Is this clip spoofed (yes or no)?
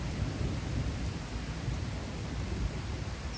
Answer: no